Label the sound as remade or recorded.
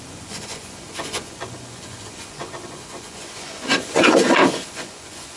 remade